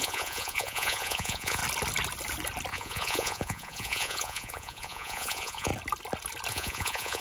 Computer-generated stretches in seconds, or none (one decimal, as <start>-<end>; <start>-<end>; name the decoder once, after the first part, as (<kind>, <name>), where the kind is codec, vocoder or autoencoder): 0.0-1.6 (vocoder, Vocos); 2.7-5.7; 6.5-7.2